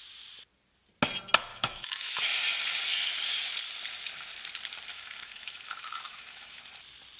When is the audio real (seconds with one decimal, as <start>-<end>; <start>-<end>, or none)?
0.0-1.5; 2.2-4.9; 6.6-7.2